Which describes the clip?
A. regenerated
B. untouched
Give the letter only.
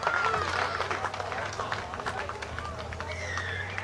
B